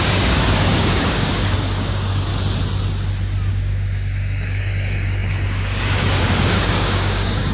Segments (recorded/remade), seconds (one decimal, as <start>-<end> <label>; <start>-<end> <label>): 0.0-2.3 remade; 2.3-3.5 recorded; 3.5-7.5 remade